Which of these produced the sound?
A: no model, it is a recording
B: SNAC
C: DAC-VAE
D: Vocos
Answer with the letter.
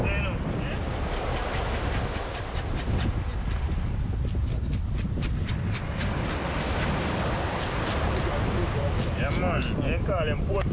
A